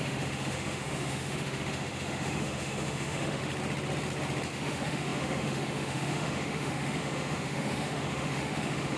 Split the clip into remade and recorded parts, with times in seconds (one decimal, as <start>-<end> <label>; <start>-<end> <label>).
0.0-3.4 remade; 3.4-4.5 recorded; 4.5-9.0 remade